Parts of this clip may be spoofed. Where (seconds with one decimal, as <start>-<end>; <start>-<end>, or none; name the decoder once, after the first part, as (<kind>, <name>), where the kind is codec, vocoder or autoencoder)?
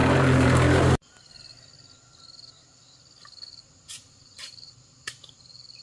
3.5-5.8 (vocoder, BigVGAN v2)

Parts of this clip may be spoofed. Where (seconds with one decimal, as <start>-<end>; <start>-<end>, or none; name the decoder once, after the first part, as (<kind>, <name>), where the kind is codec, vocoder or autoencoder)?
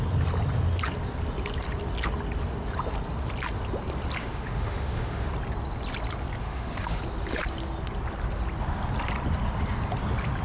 4.2-5.3 (autoencoder, DAC-VAE); 6.4-7.0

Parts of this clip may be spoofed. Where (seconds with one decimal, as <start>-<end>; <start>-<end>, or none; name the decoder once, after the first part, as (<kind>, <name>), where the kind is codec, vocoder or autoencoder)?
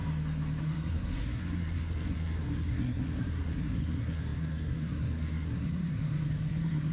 0.6-6.9 (codec, SNAC)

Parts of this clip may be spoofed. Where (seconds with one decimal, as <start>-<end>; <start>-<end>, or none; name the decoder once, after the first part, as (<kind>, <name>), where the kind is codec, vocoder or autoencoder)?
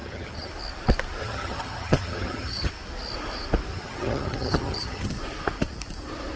0.0-0.5 (vocoder, HiFi-GAN); 1.2-2.7; 3.7-5.1